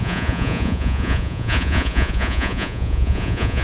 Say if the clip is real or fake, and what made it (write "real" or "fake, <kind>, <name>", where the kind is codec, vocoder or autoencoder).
fake, vocoder, Vocos